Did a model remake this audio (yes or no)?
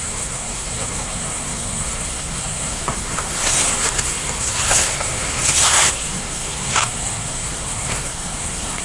yes